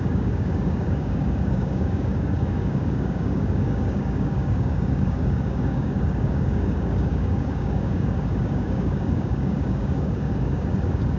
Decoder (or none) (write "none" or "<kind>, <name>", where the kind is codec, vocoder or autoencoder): codec, DAC